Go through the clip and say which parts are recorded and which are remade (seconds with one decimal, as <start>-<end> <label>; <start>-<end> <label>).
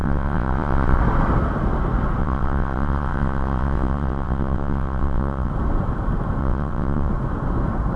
0.0-1.0 remade; 1.0-2.2 recorded; 2.2-5.5 remade; 5.5-6.4 recorded; 6.4-7.1 remade; 7.1-8.0 recorded